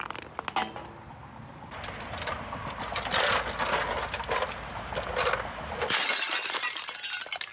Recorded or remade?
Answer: recorded